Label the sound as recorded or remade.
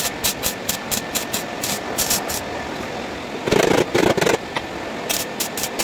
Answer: recorded